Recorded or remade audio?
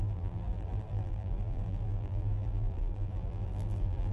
remade